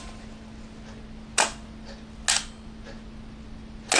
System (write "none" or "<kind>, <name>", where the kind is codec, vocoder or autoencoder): none